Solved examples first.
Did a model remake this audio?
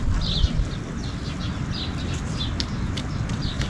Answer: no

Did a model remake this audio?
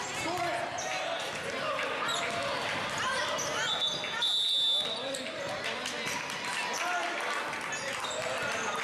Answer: no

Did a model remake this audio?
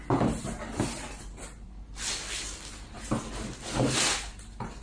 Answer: no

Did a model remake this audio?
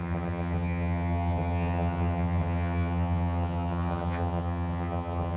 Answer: yes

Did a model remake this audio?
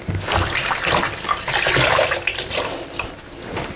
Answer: no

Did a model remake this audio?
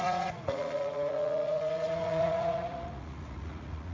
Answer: yes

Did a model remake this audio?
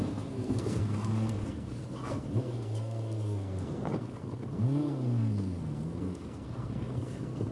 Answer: yes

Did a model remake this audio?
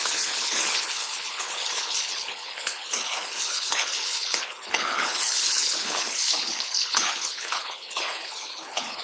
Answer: yes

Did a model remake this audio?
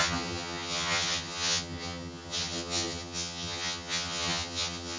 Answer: yes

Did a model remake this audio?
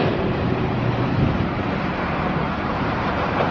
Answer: yes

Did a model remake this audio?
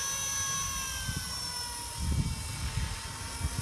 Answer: no